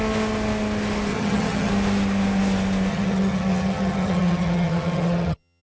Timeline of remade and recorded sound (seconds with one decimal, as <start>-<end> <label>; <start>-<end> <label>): 0.0-1.1 recorded; 1.1-1.7 remade; 1.7-2.9 recorded; 2.9-5.6 remade